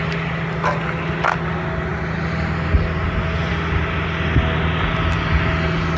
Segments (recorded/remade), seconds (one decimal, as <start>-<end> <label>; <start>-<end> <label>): 0.0-6.0 recorded